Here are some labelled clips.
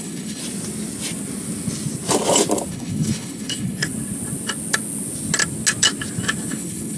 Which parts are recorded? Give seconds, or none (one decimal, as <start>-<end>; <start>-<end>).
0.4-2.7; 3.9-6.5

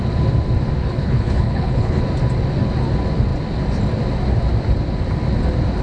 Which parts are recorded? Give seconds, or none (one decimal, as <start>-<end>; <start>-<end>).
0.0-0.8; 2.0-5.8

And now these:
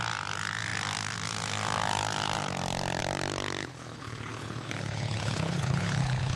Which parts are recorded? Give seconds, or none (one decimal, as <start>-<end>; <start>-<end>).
0.0-3.6

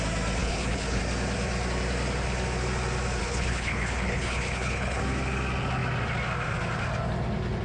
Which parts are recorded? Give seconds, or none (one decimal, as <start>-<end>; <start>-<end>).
0.0-0.4; 1.0-3.2; 5.0-7.6

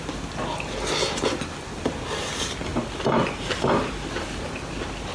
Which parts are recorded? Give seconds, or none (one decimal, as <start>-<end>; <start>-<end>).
0.0-5.1